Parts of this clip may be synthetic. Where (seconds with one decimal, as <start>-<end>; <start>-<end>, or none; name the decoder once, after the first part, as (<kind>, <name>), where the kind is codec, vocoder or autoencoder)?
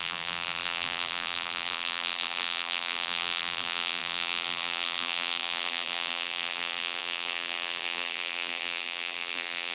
0.0-9.7 (vocoder, BigVGAN v2)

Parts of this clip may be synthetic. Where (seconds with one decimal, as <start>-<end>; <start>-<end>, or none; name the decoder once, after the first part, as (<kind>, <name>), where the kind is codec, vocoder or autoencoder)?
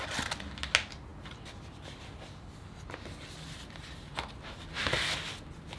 none